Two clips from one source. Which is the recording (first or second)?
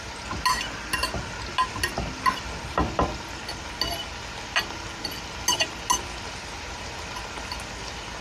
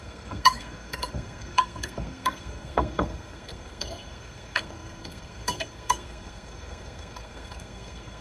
first